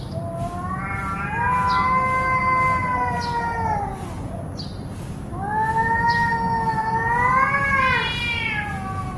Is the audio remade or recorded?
recorded